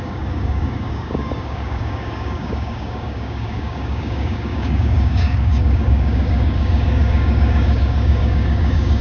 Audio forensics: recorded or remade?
remade